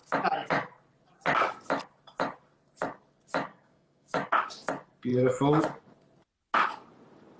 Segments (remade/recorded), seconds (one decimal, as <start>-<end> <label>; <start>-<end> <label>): 0.0-3.5 recorded; 3.5-4.3 remade; 4.3-5.1 recorded; 5.1-5.6 remade; 5.6-7.4 recorded